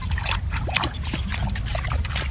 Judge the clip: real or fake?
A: real